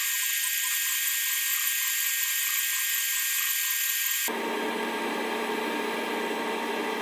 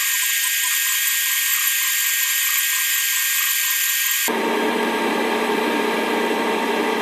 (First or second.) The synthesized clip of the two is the second